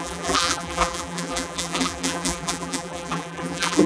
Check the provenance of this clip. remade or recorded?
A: remade